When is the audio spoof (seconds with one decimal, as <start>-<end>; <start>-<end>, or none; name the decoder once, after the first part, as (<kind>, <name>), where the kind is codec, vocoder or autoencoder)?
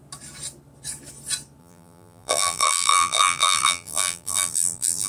1.6-5.1 (vocoder, BigVGAN v2)